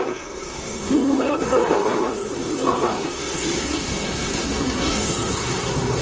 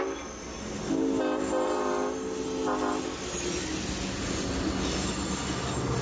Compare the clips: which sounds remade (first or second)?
first